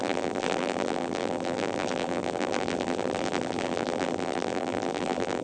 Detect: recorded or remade remade